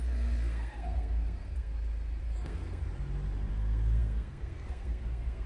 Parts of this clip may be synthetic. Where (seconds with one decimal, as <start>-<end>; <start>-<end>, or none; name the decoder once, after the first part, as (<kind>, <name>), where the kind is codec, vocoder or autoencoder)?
0.0-1.7 (codec, SNAC); 2.2-2.8; 3.5-5.5